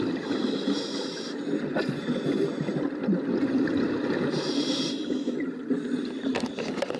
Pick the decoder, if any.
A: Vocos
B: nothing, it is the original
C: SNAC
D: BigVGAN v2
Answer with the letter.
B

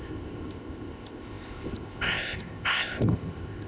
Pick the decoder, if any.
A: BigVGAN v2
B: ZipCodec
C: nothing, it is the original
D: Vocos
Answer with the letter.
B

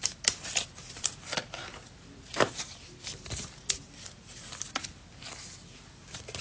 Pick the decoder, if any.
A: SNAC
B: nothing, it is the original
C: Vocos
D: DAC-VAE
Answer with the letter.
B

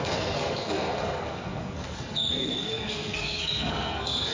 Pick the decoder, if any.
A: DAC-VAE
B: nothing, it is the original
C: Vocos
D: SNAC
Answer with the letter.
D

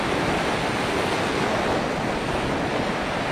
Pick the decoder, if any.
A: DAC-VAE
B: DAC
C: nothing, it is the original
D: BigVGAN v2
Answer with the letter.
C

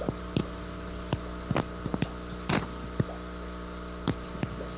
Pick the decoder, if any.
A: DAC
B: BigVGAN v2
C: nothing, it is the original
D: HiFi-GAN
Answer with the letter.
C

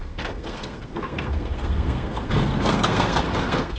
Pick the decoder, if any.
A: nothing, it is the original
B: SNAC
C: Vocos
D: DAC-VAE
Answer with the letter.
B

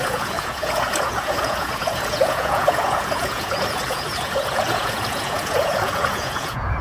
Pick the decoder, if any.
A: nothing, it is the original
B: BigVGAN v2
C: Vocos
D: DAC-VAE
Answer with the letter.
C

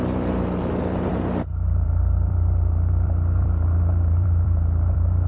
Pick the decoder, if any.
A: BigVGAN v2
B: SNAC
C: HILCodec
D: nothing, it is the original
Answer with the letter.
A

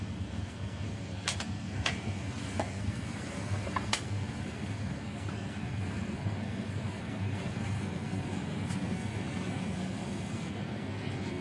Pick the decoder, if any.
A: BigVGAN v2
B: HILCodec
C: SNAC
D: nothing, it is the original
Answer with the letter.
C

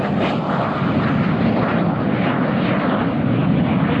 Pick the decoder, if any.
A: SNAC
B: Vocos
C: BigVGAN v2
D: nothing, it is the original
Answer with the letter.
D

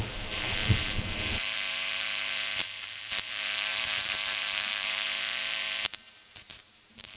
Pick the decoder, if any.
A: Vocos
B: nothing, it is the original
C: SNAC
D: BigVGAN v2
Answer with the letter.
D